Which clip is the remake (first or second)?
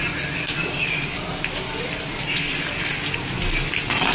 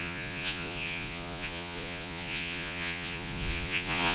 second